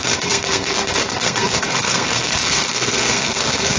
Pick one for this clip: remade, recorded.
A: remade